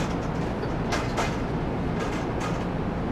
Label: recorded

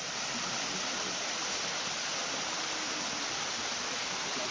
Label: recorded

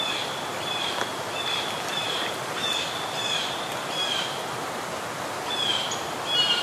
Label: remade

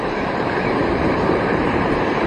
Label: remade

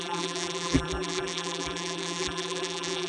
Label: remade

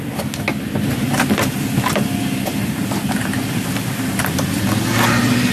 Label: recorded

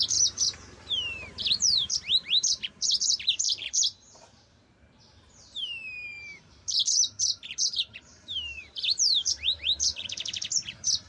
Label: remade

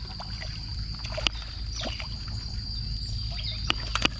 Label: recorded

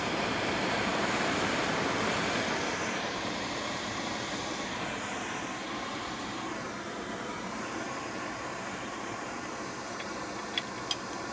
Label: remade